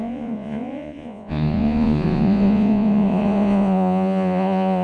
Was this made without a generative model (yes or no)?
no